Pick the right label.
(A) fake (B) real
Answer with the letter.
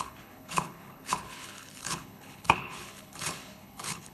A